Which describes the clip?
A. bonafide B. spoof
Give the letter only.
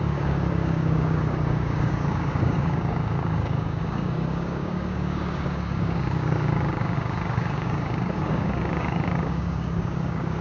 B